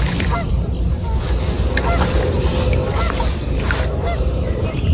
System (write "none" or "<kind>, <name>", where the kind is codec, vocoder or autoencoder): none